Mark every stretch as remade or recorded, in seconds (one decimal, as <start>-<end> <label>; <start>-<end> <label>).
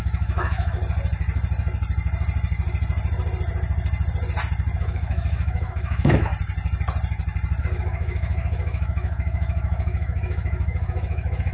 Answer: 0.0-0.8 remade; 0.8-4.8 recorded; 4.8-6.3 remade; 6.3-7.6 recorded; 7.6-11.5 remade